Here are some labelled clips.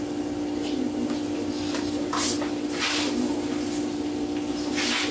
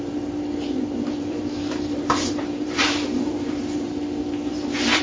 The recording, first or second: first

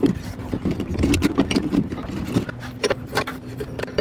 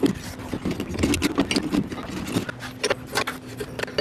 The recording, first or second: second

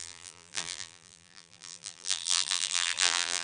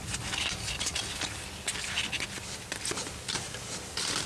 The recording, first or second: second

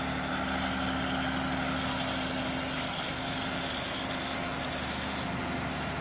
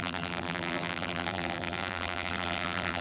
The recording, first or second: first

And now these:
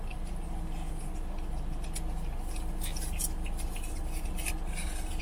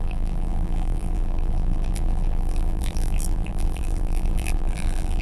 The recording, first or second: first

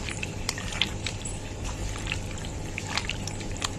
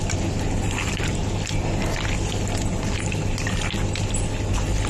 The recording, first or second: second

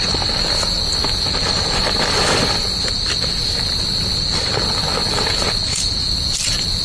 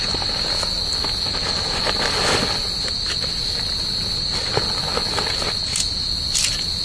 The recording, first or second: second